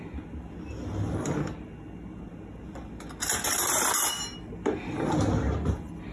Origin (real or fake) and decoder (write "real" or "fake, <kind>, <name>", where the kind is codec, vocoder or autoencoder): real